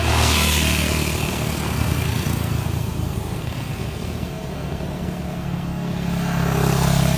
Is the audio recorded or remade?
remade